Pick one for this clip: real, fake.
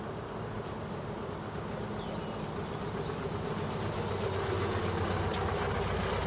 real